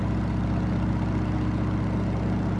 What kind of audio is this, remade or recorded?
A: recorded